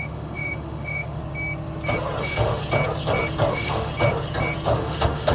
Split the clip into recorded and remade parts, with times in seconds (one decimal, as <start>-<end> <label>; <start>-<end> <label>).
0.0-1.2 remade; 1.2-2.2 recorded; 2.2-2.6 remade; 2.6-3.5 recorded; 3.5-3.9 remade; 3.9-4.8 recorded; 4.8-5.3 remade